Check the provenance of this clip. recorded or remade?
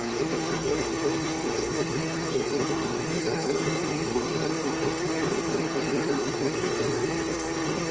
remade